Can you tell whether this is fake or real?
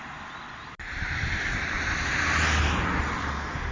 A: real